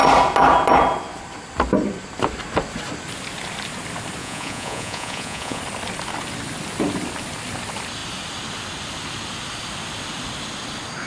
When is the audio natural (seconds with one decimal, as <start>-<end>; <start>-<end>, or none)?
0.0-4.2; 5.6-11.1